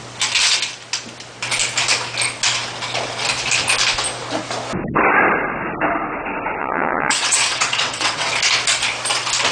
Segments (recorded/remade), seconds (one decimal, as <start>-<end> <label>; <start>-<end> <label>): 0.0-6.6 recorded; 6.6-8.3 remade; 8.3-9.5 recorded